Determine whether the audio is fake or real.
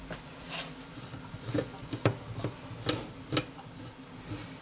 real